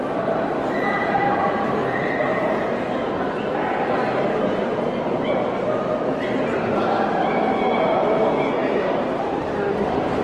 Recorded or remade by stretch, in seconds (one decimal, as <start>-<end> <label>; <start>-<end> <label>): 0.0-8.6 recorded; 8.6-10.2 remade